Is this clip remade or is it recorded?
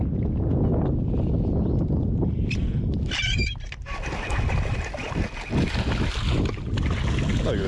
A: recorded